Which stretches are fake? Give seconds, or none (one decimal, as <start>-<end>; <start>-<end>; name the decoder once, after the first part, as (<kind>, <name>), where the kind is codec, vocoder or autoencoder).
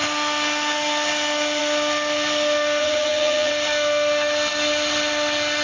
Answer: 2.8-3.5 (vocoder, HiFi-GAN)